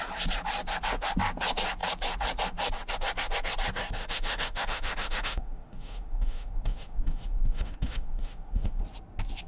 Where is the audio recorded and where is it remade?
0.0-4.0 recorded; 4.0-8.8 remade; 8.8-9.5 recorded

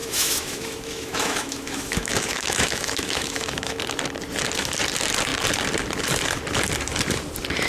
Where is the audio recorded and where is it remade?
0.0-3.8 remade; 3.8-7.7 recorded

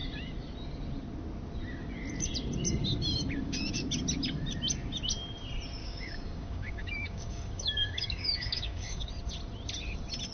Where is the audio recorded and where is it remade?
0.0-5.8 recorded; 5.8-9.1 remade; 9.1-10.3 recorded

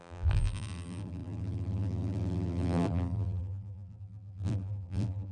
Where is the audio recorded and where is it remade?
0.0-5.3 remade

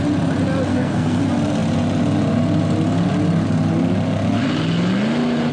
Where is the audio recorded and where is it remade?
0.0-0.7 recorded; 0.7-1.2 remade; 1.2-5.5 recorded

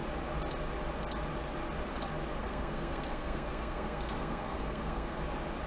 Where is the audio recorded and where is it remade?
0.0-2.4 recorded; 2.4-5.2 remade; 5.2-5.7 recorded